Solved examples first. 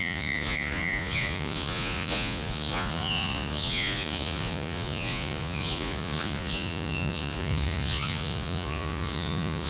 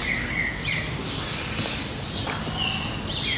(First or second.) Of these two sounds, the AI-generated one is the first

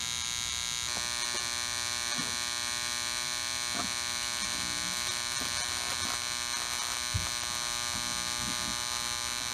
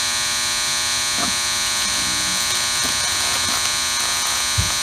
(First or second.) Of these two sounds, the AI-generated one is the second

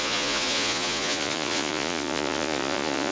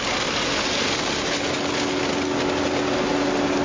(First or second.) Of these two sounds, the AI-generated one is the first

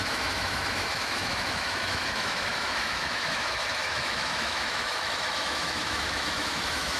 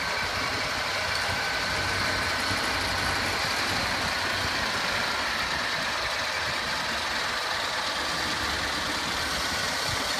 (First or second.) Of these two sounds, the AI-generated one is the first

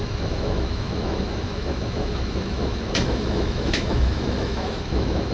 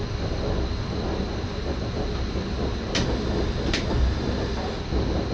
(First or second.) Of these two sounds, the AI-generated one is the first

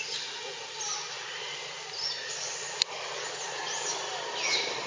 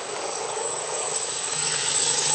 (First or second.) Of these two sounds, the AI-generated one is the second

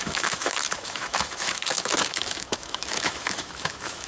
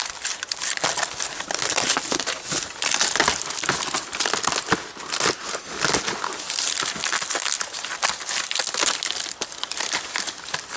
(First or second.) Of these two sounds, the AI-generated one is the first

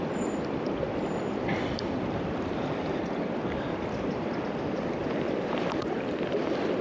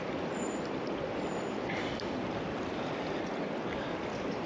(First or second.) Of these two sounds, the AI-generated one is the first